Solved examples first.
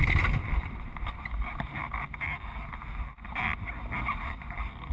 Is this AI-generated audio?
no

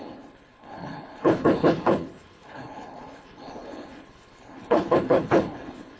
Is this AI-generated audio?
yes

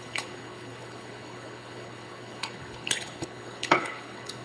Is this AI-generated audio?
yes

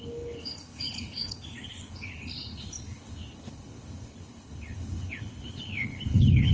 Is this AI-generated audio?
yes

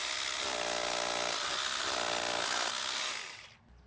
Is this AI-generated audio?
no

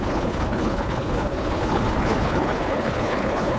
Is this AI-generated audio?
yes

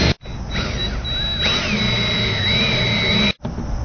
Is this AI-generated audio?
no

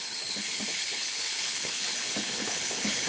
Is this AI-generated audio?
yes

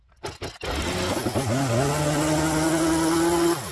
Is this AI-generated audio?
no